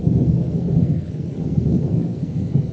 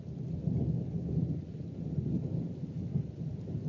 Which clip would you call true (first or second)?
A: second